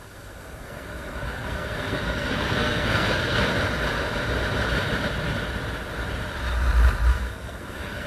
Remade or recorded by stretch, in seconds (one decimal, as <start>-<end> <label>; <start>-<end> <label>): 0.0-3.5 remade; 3.5-7.1 recorded; 7.1-8.1 remade